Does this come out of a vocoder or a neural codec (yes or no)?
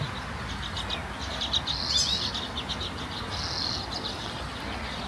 no